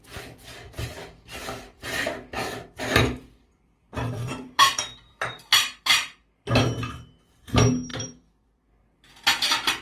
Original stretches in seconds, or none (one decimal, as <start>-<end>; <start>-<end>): 0.0-2.4; 6.6-7.9; 9.1-9.8